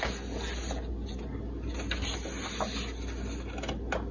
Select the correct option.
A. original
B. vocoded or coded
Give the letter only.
A